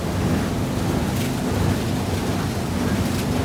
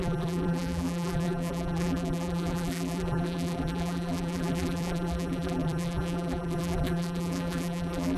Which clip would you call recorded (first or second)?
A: first